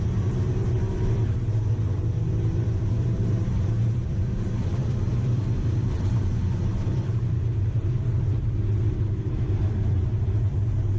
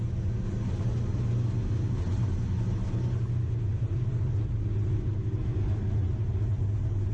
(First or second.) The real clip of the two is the second